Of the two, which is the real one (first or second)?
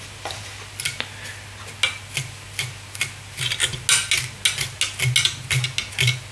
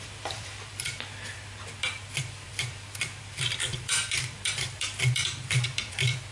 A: first